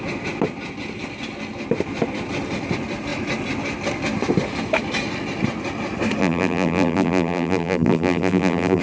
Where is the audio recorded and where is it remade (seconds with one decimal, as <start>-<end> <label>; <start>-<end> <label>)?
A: 0.0-6.2 recorded; 6.2-8.8 remade